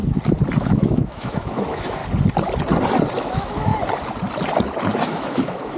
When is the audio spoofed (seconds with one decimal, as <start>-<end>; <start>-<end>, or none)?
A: 0.6-2.0; 3.2-3.7; 5.1-5.8